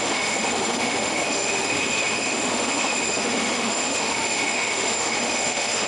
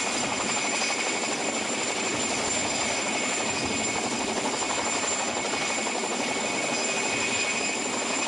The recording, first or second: second